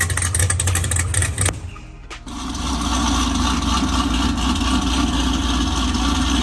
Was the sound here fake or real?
real